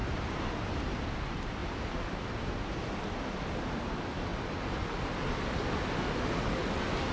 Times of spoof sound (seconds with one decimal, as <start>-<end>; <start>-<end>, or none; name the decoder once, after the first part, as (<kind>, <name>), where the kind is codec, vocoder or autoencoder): 0.0-0.7 (vocoder, BigVGAN v2); 1.6-3.2